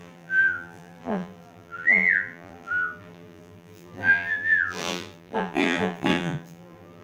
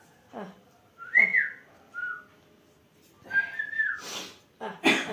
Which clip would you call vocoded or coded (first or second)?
first